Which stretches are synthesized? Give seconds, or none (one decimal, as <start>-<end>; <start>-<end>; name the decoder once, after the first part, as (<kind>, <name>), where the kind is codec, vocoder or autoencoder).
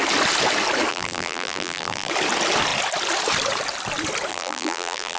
0.9-2.1 (vocoder, BigVGAN v2); 4.3-5.2